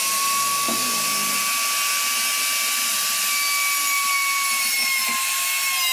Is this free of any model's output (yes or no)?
yes